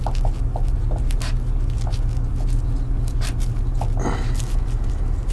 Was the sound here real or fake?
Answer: real